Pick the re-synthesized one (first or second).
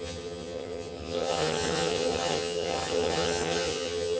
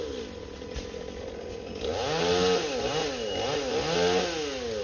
first